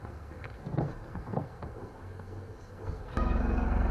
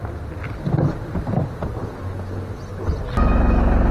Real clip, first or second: second